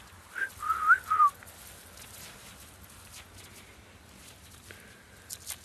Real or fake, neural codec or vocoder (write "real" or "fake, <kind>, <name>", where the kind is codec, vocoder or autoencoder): real